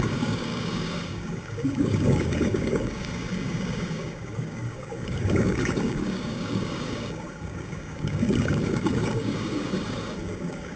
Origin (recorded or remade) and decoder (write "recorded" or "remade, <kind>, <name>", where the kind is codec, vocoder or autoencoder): remade, codec, DAC